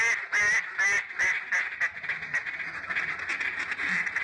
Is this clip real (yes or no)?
yes